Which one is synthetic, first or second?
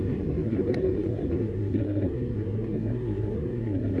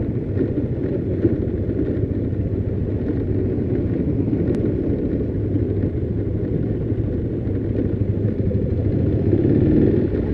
first